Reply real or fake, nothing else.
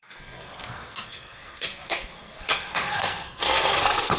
fake